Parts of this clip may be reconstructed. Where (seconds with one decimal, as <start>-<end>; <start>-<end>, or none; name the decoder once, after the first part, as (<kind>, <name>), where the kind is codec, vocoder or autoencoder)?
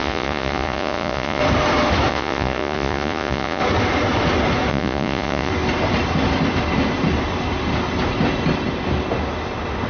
0.0-1.4 (vocoder, Vocos); 2.1-3.6; 4.7-5.5